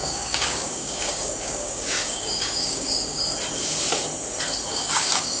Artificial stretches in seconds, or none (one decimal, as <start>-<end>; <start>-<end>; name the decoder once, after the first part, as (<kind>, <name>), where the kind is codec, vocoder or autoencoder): 0.0-3.2 (codec, DAC); 4.7-5.4